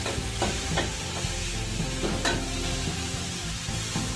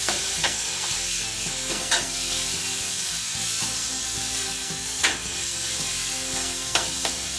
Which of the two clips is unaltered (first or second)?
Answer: first